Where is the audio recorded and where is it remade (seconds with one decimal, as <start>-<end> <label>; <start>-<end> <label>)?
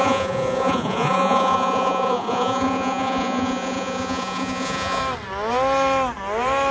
0.0-5.0 remade; 5.0-6.7 recorded